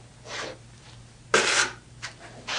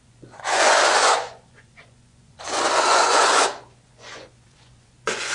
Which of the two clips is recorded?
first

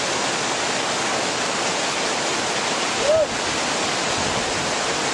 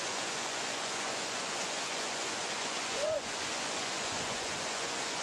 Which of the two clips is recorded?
first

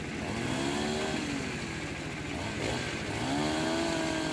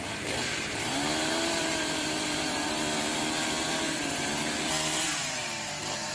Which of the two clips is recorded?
first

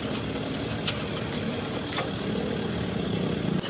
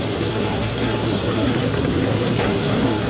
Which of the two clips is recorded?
first